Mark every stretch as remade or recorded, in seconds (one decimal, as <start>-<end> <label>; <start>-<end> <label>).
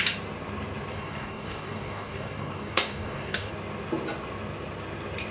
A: 0.0-0.9 recorded; 0.9-3.5 remade; 3.5-5.3 recorded